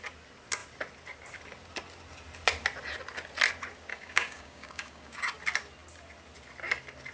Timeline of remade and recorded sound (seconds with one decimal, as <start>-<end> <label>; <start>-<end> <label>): 0.0-3.9 recorded; 3.9-5.2 remade; 5.2-7.1 recorded